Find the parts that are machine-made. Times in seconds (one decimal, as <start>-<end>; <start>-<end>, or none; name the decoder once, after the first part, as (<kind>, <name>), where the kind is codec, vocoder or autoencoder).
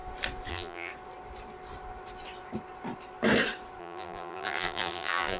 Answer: 0.5-0.9 (vocoder, BigVGAN v2); 3.8-5.4